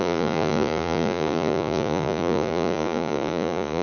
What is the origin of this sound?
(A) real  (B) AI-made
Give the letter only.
B